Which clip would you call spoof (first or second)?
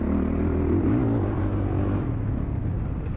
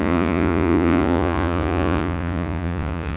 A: second